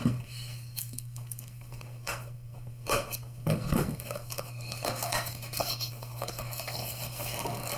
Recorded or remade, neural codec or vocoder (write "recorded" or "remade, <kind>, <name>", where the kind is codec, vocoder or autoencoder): remade, codec, SNAC